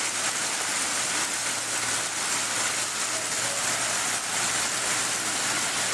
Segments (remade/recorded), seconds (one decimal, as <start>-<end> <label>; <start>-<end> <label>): 0.0-5.9 recorded